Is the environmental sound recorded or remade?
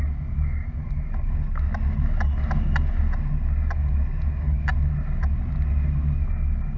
recorded